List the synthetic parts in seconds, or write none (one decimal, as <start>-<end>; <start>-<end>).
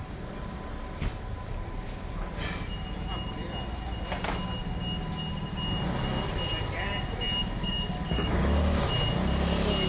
7.6-8.9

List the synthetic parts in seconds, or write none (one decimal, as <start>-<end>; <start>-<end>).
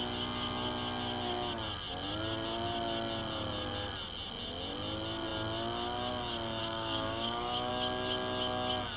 6.6-7.7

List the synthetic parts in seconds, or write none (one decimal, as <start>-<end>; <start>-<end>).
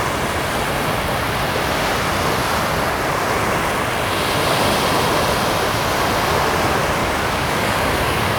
7.0-8.4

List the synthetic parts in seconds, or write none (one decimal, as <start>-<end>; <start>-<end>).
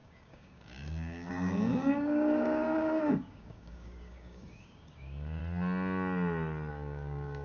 0.0-5.4; 6.7-7.4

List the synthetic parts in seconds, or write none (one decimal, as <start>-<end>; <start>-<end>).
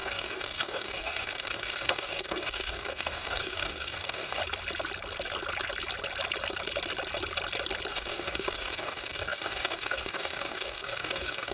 0.0-4.4; 7.9-11.5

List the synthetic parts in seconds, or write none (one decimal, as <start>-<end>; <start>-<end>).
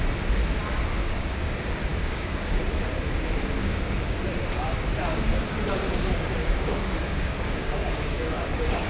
1.0-1.5; 1.9-2.6; 3.6-4.2; 6.4-8.9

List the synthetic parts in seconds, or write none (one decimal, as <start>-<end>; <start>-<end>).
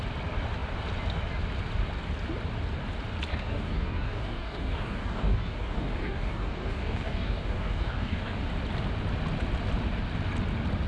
3.3-8.4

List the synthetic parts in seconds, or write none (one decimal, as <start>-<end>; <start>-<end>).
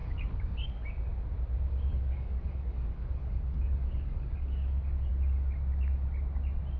0.0-0.9; 1.9-5.1